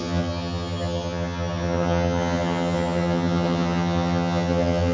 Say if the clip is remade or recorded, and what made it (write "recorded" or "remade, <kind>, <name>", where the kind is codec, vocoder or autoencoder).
remade, vocoder, HiFi-GAN